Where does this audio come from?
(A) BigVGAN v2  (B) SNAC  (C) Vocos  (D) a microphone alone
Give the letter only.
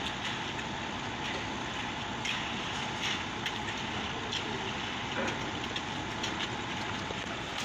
D